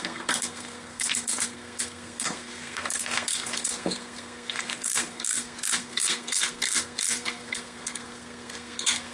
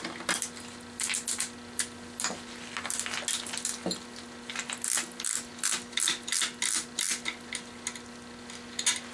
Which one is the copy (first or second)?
first